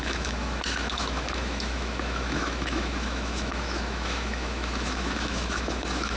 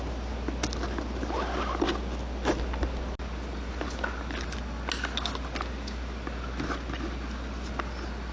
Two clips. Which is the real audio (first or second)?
second